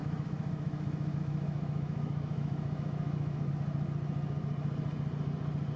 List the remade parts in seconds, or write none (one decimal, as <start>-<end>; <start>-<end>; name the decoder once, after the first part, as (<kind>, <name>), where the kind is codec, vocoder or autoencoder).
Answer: 0.0-3.5 (autoencoder, DAC-VAE)

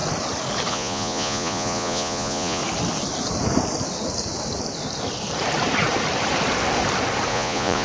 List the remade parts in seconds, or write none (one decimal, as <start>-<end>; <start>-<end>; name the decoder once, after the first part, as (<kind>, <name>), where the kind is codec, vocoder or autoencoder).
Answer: 0.7-2.6 (vocoder, Vocos); 7.3-7.8

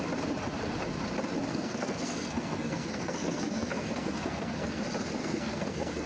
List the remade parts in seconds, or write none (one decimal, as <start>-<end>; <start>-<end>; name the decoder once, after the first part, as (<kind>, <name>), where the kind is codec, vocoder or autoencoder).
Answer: 1.5-4.8 (codec, SNAC); 5.2-6.1

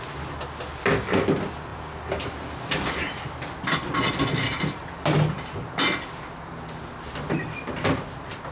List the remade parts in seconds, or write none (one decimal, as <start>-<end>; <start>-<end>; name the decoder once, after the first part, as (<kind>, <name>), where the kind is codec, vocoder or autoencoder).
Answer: none

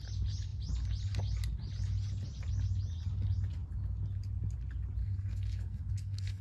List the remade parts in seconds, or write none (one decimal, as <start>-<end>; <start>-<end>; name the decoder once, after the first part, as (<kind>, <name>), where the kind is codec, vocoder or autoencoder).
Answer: 5.0-6.4 (codec, SNAC)

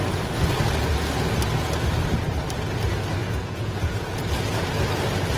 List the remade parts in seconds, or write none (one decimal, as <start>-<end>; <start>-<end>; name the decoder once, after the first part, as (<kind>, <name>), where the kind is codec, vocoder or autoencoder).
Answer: 3.2-4.3 (vocoder, Vocos)

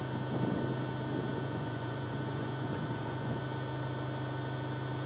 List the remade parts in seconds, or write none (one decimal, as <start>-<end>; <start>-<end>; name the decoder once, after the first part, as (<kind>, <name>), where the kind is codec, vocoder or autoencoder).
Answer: 1.3-3.4 (vocoder, Vocos)